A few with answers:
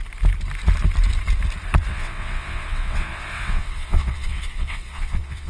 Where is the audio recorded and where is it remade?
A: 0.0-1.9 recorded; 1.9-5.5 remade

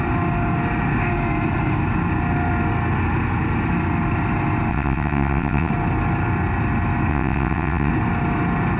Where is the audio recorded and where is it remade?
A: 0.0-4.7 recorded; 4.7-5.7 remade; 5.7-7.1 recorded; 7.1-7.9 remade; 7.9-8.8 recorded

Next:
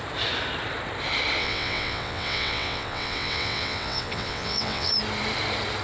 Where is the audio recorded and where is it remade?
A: 0.0-1.4 recorded; 1.4-4.9 remade; 4.9-5.8 recorded